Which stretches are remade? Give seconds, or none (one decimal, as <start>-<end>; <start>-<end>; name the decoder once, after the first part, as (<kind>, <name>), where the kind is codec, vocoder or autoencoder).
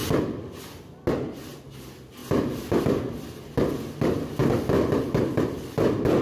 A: 0.0-0.6 (vocoder, BigVGAN v2)